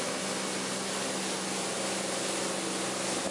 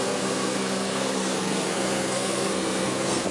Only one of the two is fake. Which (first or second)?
second